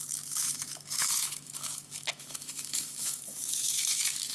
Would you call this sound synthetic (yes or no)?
yes